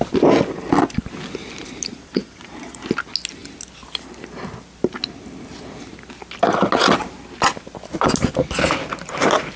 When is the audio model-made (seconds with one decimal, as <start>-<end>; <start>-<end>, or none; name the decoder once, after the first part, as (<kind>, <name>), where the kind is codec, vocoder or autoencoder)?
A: 1.9-2.8 (vocoder, Vocos)